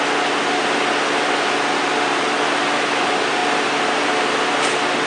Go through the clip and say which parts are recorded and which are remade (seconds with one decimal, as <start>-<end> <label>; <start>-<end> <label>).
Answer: 0.0-5.1 recorded